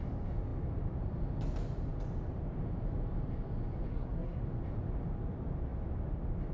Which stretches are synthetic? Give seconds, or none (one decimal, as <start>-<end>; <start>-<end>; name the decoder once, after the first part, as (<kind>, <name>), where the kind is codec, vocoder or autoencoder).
3.9-4.4 (codec, SNAC)